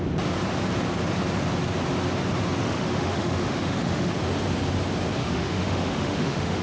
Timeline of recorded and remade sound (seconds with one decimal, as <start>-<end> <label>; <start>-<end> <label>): 0.0-2.6 recorded; 2.6-4.1 remade; 4.1-5.2 recorded; 5.2-6.6 remade